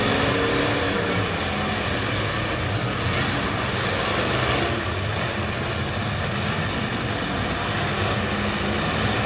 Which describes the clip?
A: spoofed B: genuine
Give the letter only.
B